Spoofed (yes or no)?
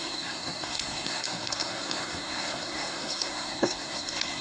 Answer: yes